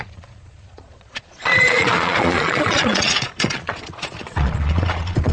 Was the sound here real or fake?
fake